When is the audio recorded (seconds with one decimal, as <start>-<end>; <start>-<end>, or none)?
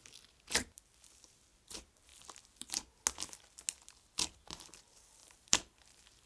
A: 0.0-5.2